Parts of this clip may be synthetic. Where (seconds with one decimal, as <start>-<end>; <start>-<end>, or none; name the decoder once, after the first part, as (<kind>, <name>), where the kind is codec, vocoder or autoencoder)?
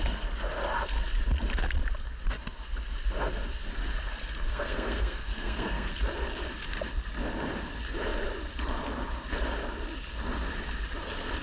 4.5-5.9 (codec, SNAC)